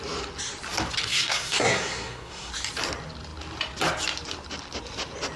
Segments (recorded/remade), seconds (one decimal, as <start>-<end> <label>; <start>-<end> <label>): 0.0-1.1 recorded; 1.1-2.5 remade; 2.5-5.4 recorded